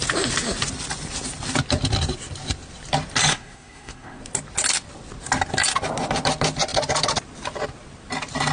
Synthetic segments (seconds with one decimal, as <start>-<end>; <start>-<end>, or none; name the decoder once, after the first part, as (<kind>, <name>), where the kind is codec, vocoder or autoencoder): 3.3-4.2 (codec, SNAC)